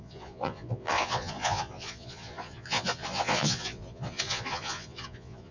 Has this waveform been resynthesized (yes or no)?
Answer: yes